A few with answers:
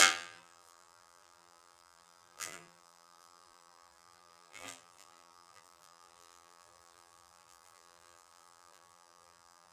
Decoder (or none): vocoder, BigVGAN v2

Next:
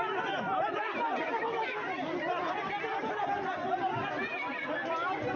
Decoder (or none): none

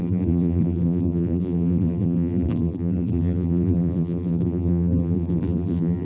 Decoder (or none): vocoder, BigVGAN v2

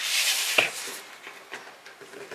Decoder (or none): vocoder, BigVGAN v2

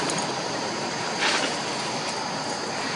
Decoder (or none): vocoder, BigVGAN v2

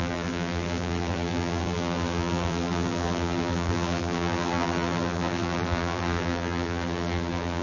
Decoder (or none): vocoder, BigVGAN v2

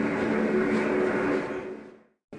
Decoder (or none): none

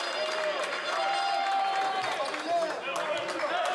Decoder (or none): none